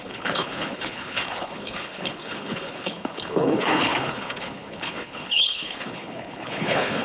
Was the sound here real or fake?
fake